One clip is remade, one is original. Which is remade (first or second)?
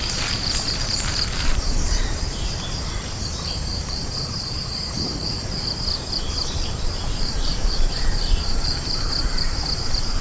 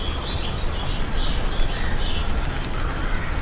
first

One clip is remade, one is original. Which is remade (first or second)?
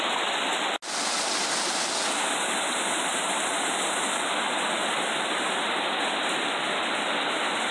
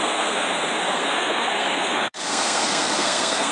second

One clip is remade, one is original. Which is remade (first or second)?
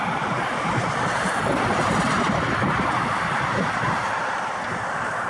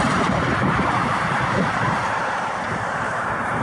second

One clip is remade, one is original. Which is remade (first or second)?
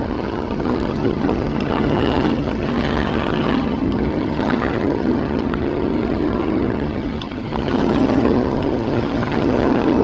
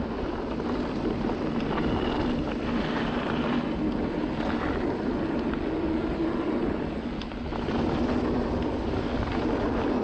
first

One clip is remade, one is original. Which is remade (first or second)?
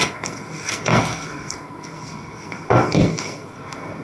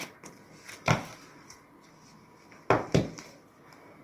first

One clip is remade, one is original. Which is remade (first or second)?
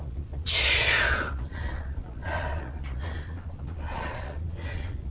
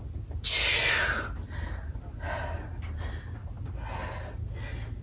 first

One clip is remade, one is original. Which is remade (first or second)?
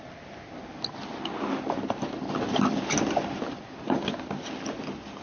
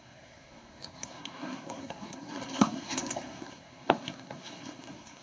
second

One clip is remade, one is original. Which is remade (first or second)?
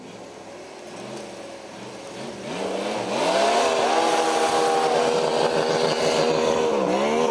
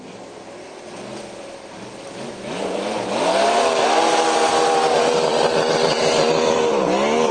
second